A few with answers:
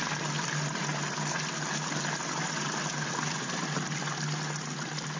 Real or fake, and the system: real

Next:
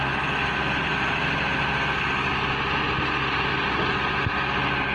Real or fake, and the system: real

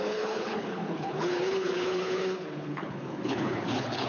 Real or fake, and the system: fake, codec, HILCodec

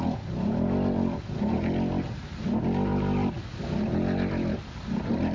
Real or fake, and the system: real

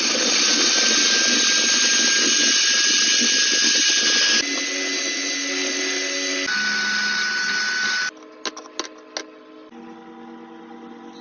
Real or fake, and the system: real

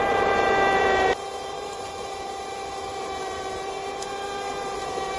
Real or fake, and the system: fake, vocoder, BigVGAN v2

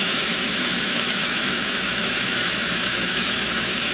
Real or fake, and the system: fake, autoencoder, DAC-VAE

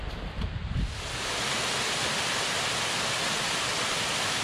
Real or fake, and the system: real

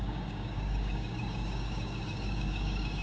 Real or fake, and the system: fake, codec, DAC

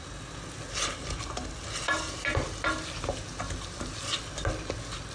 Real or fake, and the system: real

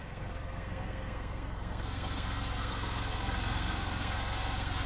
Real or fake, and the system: fake, codec, SNAC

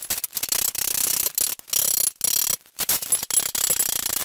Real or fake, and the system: real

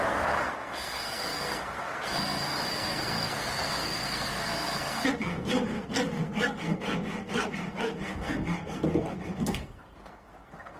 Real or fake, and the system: fake, codec, SNAC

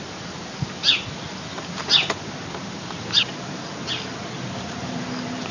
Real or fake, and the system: real